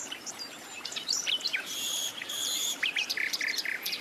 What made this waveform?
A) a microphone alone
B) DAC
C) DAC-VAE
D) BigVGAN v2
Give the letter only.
D